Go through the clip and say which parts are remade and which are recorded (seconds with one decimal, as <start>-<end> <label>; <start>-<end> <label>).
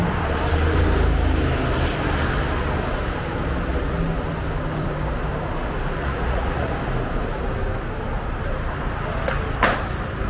0.0-6.0 recorded; 6.0-6.7 remade; 6.7-10.3 recorded